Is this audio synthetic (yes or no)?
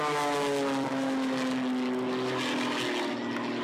no